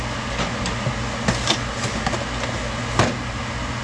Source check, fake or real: real